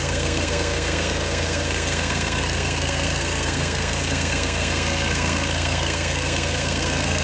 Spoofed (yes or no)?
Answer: yes